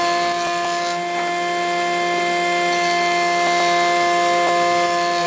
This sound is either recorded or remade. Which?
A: recorded